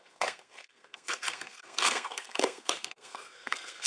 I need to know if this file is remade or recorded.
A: remade